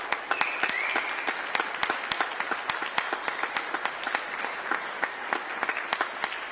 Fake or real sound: real